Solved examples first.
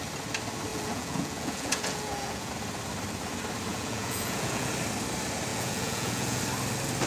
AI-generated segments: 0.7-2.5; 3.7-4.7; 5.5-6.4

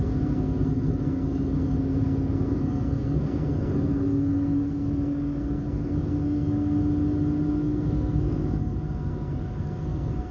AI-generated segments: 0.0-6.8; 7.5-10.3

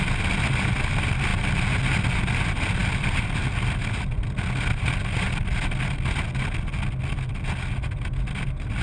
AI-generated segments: none

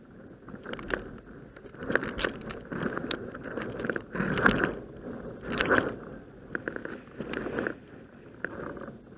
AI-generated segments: none

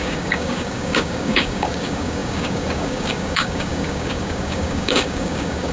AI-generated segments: 0.0-5.7

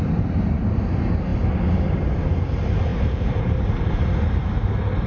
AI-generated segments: 2.9-5.1